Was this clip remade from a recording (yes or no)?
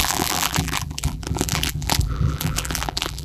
yes